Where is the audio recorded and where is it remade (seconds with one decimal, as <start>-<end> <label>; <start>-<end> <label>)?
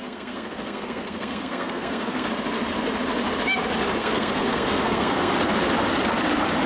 0.0-2.3 remade; 2.3-4.0 recorded; 4.0-5.3 remade; 5.3-6.7 recorded